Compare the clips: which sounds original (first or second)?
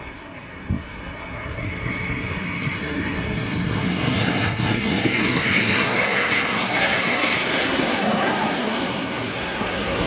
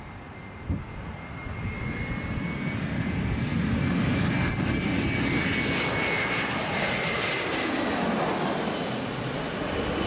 second